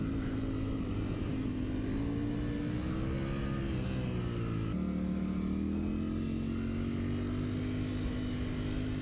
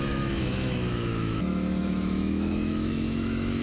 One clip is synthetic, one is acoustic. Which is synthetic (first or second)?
second